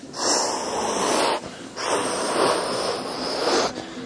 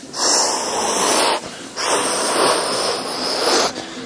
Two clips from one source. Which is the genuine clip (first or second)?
first